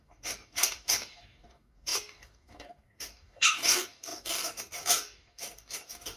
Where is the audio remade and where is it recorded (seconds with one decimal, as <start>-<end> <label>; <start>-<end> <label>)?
0.0-6.2 remade